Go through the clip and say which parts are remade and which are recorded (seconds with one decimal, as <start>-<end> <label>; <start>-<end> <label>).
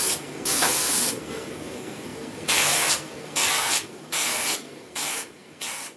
0.0-6.0 remade